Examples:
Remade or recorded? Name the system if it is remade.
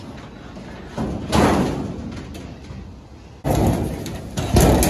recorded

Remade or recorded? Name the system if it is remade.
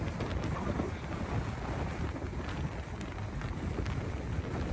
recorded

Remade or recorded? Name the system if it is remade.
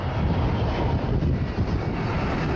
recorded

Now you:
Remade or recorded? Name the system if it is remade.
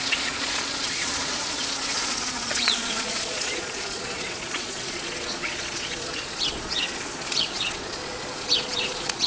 remade, vocoder, Vocos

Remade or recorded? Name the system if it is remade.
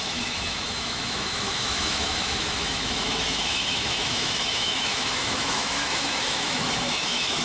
remade, autoencoder, DAC-VAE